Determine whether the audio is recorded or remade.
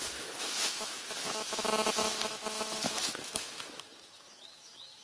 remade